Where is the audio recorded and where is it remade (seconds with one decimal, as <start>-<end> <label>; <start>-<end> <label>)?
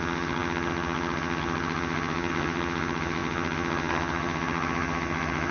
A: 0.0-5.5 remade